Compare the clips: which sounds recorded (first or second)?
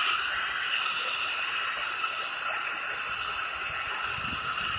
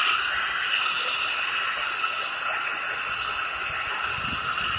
second